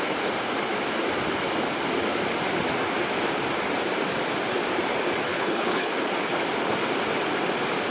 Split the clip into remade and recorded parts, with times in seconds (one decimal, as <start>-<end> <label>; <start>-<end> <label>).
0.0-5.3 recorded; 5.3-5.9 remade; 5.9-7.9 recorded